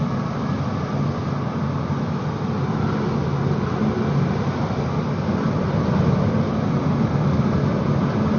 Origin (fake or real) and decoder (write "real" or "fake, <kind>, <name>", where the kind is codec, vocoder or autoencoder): real